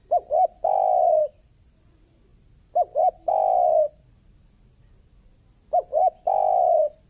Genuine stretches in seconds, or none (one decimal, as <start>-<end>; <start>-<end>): 0.0-1.2; 1.8-7.1